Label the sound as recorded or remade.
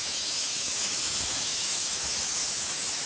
remade